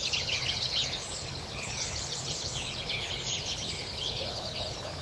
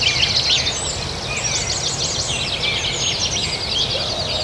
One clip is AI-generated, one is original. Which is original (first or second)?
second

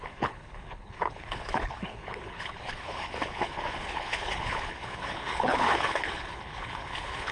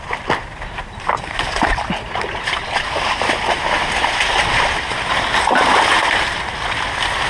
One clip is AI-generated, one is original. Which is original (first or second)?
second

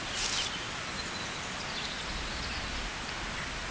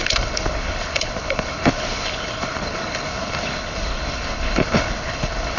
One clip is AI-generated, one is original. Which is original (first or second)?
first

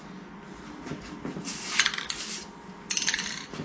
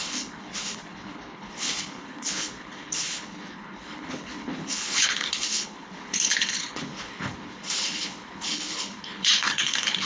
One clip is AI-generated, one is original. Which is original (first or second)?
first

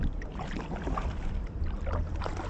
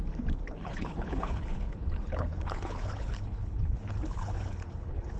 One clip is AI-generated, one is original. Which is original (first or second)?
first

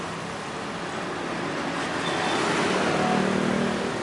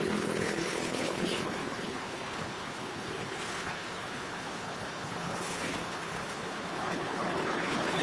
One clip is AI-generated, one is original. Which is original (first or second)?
first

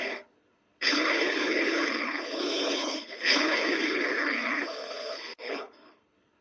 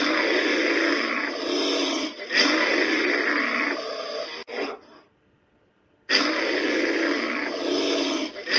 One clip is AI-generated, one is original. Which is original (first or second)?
second